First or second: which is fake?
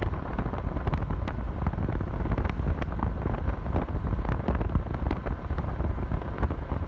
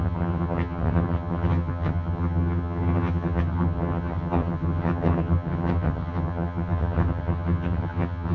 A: second